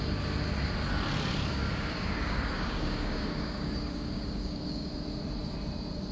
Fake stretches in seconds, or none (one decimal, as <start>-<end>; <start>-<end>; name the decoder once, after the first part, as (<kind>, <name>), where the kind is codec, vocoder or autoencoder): 1.5-4.9 (codec, DAC)